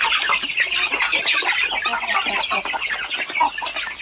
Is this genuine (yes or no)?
yes